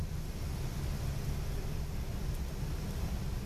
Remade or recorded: recorded